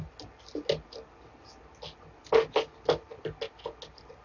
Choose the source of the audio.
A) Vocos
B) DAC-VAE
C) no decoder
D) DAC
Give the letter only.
C